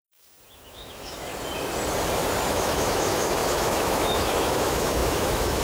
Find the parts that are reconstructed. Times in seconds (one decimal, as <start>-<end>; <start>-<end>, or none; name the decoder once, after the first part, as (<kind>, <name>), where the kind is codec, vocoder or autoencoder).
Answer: 0.0-1.3 (autoencoder, DAC-VAE); 2.5-5.6

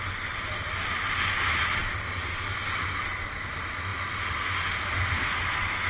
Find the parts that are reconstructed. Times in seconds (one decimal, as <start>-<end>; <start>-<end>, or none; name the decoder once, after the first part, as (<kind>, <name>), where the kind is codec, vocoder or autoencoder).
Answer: none